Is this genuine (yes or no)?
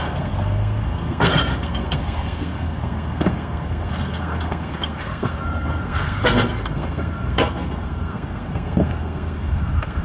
no